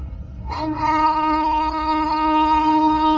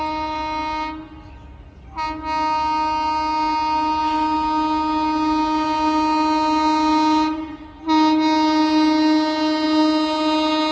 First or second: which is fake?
first